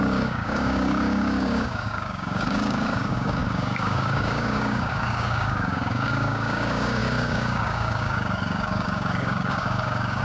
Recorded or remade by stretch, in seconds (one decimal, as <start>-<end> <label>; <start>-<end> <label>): 0.0-10.2 remade